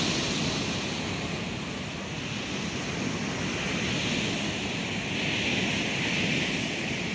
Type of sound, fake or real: real